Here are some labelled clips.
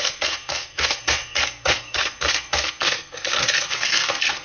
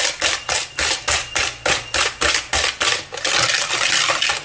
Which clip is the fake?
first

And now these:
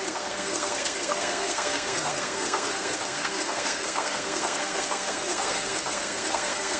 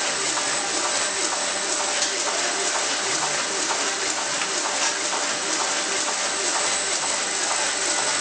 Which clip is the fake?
first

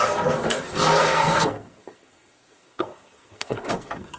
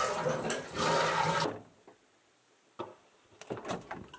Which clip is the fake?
first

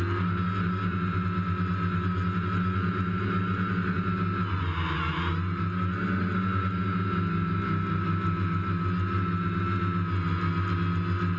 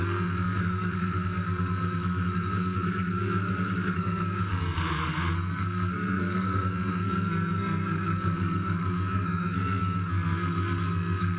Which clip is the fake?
second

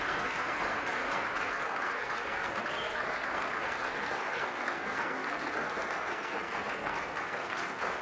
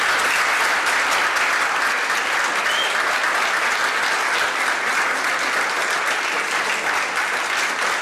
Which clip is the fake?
first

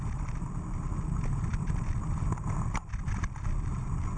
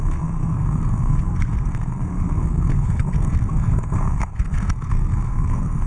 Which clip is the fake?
second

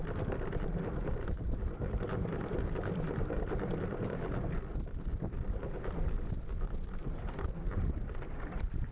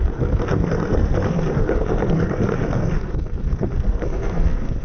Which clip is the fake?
second